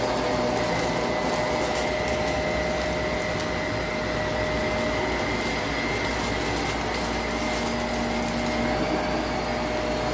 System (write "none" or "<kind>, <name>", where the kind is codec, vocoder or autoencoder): none